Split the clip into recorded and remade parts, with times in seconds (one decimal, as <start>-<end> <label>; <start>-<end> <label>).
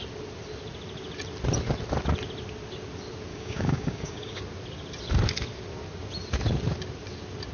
0.0-3.3 recorded; 3.3-4.4 remade; 4.4-7.5 recorded